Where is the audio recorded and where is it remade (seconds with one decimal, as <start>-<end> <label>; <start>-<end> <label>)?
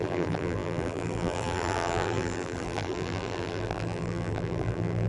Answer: 0.0-5.1 remade